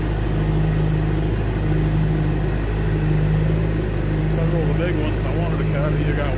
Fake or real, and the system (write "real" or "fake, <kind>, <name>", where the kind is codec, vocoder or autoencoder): real